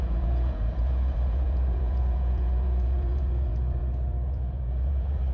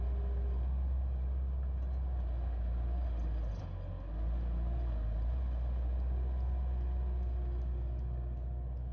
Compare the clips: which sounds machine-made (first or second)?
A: first